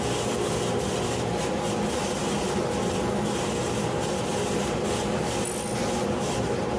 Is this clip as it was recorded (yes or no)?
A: yes